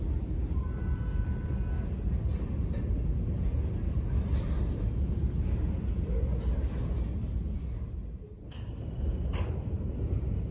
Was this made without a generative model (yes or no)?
yes